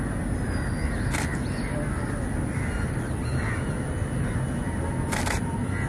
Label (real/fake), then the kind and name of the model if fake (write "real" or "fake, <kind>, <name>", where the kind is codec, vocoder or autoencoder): real